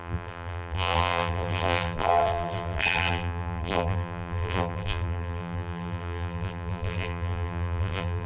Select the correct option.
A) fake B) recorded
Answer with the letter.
A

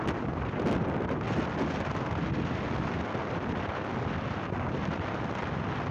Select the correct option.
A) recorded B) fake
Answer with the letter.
A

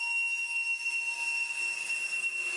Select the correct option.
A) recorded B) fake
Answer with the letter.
A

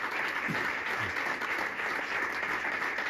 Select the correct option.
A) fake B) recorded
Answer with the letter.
B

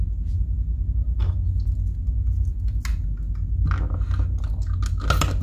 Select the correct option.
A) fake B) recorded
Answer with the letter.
B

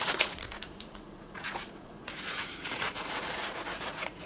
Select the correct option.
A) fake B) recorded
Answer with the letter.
A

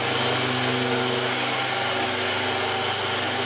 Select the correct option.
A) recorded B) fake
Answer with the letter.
A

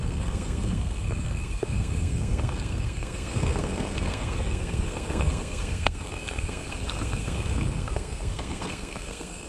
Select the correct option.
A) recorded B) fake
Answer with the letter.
B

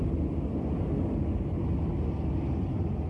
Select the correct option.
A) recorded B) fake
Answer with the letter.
A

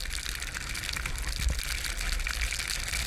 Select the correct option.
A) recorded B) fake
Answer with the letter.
A